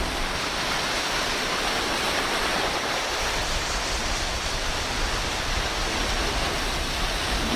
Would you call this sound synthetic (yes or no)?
no